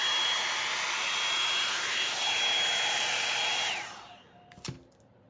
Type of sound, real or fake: real